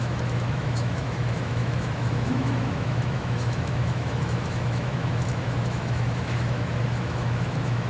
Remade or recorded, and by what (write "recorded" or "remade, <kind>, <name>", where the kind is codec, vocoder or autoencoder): remade, autoencoder, DAC-VAE